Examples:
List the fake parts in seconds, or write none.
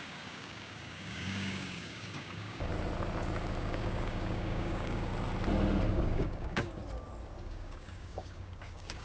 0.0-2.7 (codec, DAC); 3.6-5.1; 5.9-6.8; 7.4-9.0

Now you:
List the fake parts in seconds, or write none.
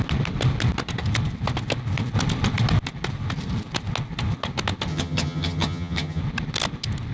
4.9-6.2 (vocoder, HiFi-GAN)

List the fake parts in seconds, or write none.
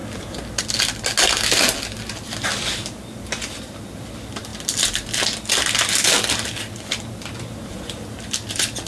none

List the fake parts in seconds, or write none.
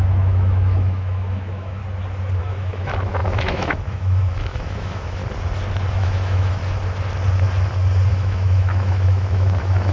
0.0-1.8 (autoencoder, DAC-VAE); 2.4-5.2; 5.9-6.6; 8.1-9.9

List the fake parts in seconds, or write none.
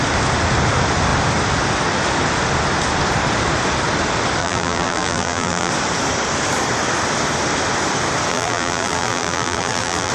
4.4-5.7 (vocoder, BigVGAN v2); 8.3-10.1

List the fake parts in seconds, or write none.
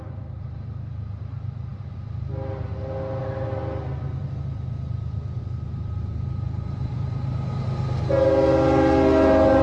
5.4-7.5 (vocoder, BigVGAN v2)